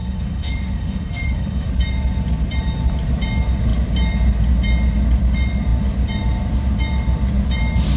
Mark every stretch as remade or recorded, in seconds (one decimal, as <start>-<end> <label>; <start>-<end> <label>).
0.0-1.7 remade; 1.7-8.0 recorded